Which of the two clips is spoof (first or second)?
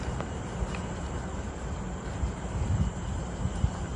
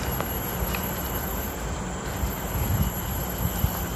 first